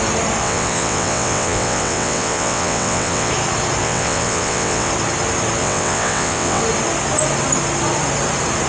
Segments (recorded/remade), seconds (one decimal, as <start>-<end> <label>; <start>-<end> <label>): 0.0-0.4 recorded; 0.4-3.3 remade; 3.3-3.8 recorded; 3.8-4.9 remade; 4.9-5.6 recorded; 5.6-6.6 remade; 6.6-8.7 recorded